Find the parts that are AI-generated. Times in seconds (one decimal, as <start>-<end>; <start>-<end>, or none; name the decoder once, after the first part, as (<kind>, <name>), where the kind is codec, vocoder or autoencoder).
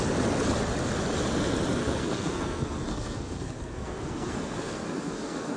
1.8-5.6 (codec, SNAC)